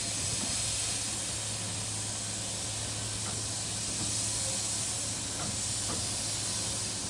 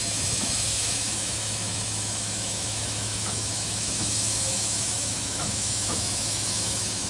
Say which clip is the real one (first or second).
first